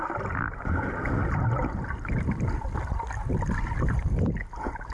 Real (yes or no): yes